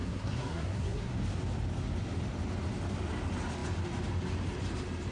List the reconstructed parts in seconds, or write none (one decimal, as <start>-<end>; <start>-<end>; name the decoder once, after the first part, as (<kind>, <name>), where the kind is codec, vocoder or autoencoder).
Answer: 0.0-1.1 (codec, SNAC)